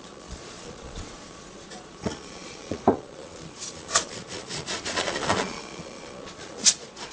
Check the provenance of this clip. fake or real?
fake